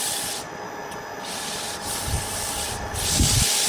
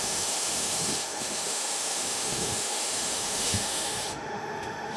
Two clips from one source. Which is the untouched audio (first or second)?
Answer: first